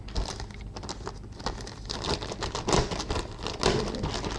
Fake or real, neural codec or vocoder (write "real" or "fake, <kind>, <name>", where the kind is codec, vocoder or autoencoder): real